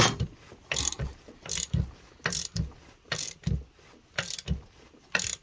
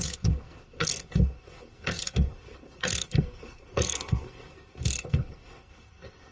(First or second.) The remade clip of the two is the second